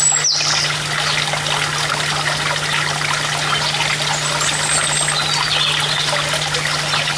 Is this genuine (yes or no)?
yes